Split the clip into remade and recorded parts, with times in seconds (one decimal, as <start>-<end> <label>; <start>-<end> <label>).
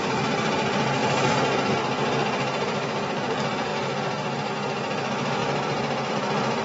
0.0-1.0 recorded; 1.0-1.7 remade; 1.7-6.6 recorded